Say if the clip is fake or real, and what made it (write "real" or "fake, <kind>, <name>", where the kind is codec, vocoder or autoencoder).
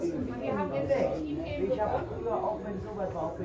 real